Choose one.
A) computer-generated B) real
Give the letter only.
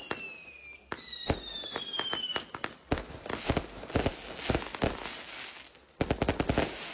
B